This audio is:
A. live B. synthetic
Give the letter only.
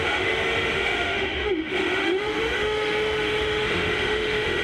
B